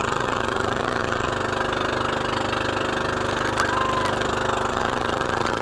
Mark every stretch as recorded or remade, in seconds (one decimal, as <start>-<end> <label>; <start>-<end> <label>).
0.0-1.3 remade; 1.3-4.7 recorded; 4.7-5.6 remade